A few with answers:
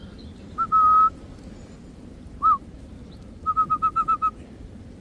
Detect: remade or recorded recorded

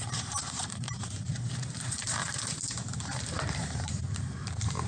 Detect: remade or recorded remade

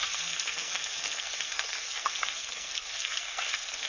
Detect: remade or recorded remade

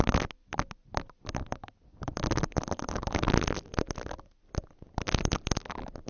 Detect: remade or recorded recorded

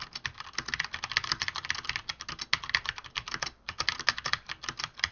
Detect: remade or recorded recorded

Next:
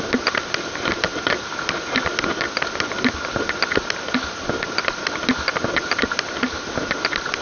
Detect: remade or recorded recorded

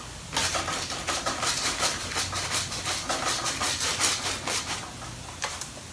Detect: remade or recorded recorded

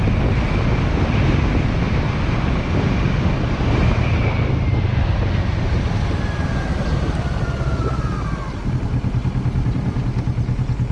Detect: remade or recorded recorded